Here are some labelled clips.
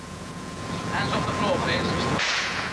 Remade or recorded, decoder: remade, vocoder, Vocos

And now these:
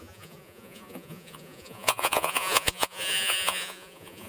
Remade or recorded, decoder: remade, vocoder, Vocos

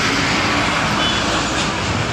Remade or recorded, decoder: recorded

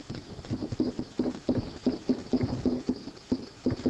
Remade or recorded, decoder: recorded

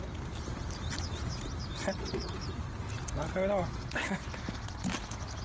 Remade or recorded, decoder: recorded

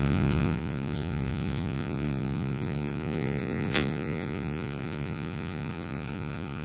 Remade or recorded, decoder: remade, vocoder, Vocos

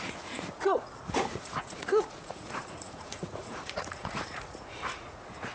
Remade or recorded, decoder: remade, vocoder, Vocos